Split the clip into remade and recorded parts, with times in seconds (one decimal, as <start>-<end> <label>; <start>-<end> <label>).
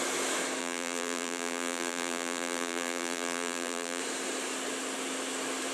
0.0-0.6 recorded; 0.6-4.0 remade; 4.0-5.7 recorded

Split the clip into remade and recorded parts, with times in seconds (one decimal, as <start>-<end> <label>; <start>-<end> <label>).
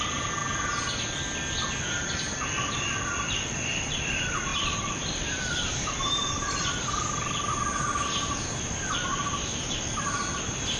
0.0-0.4 remade; 0.4-2.7 recorded; 2.7-7.9 remade; 7.9-8.7 recorded; 8.7-10.8 remade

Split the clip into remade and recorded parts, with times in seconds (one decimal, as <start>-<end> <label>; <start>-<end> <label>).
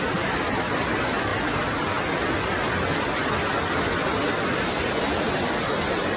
0.0-6.2 recorded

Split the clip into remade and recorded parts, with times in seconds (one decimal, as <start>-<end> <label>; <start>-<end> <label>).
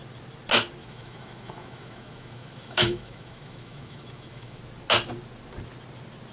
0.0-0.8 recorded; 0.8-4.6 remade; 4.6-6.3 recorded